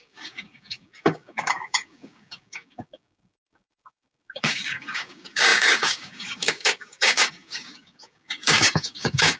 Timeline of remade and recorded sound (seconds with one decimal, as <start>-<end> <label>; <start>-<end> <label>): 0.0-9.4 remade